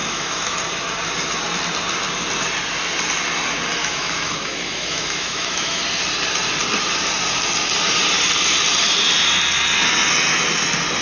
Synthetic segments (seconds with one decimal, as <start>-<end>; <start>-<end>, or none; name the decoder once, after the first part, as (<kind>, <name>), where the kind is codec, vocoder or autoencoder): 0.0-0.6 (autoencoder, DAC-VAE); 3.8-5.8